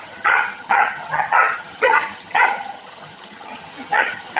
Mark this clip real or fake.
fake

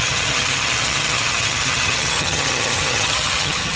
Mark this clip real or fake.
fake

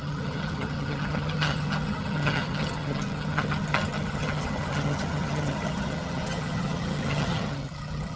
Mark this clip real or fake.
fake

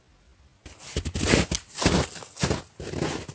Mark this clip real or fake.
real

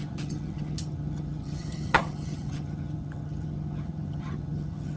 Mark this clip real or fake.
fake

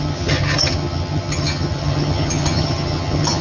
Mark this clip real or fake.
fake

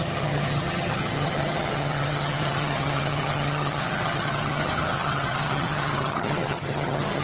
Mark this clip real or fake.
fake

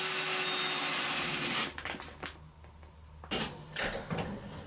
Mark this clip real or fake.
real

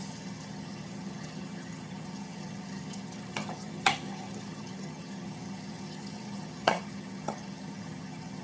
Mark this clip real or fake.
fake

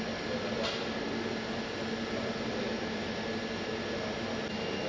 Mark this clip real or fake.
real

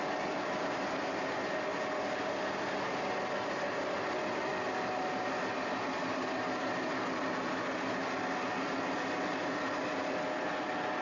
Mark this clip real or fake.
real